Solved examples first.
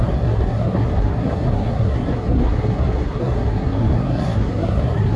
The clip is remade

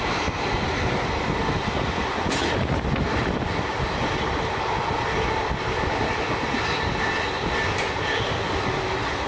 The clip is recorded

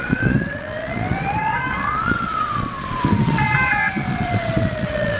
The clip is remade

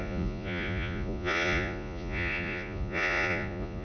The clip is remade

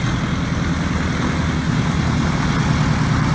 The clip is recorded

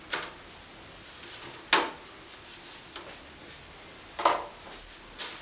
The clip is recorded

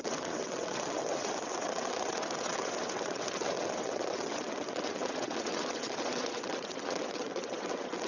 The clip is remade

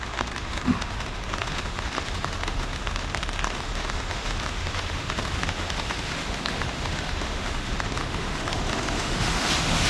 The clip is remade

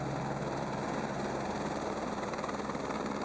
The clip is recorded